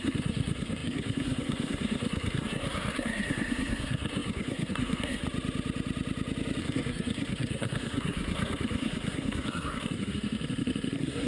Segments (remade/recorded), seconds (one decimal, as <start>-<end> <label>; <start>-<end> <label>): 0.0-5.2 remade; 5.2-6.6 recorded; 6.6-11.3 remade